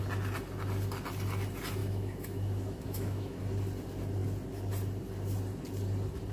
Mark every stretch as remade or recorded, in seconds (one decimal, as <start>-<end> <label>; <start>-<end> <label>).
0.0-1.8 recorded; 1.8-3.4 remade; 3.4-6.3 recorded